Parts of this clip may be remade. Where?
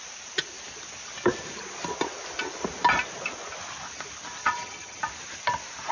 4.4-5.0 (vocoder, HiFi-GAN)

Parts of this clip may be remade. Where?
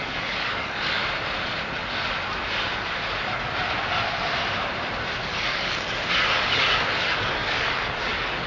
0.0-1.0 (codec, DAC); 5.2-8.5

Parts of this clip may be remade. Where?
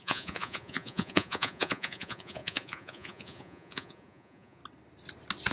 0.0-4.6 (vocoder, Vocos)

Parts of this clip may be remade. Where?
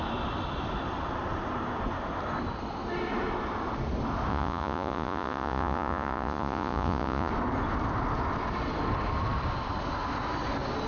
4.3-7.3 (vocoder, Vocos)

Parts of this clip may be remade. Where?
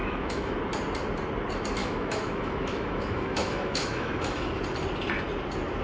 0.0-0.6 (autoencoder, DAC-VAE); 1.8-4.6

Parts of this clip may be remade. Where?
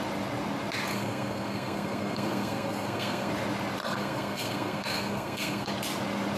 0.9-3.3 (codec, SNAC); 3.8-5.7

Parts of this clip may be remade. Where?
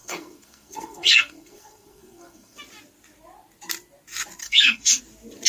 0.0-2.6 (codec, SNAC); 4.4-5.0